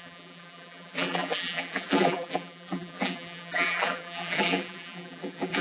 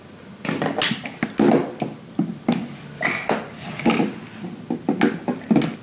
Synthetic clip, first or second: first